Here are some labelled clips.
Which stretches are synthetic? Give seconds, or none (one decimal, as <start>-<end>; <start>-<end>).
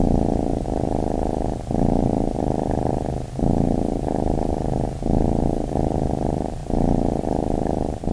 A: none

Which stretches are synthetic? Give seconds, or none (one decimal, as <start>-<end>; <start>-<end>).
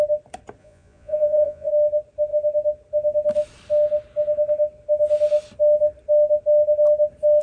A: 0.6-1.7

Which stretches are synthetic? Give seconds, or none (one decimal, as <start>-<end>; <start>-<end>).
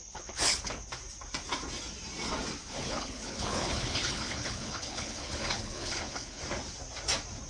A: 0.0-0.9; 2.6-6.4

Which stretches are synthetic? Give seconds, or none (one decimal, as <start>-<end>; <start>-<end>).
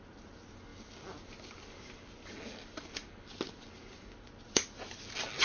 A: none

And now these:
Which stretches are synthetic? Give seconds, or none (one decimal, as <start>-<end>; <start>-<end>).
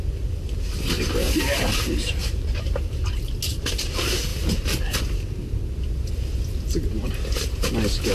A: 2.2-3.1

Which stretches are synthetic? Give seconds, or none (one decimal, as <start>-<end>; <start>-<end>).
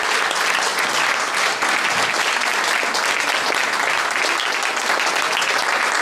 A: none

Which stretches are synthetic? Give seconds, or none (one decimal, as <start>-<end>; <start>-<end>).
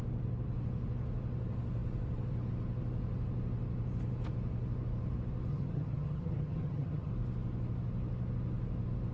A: 5.5-7.1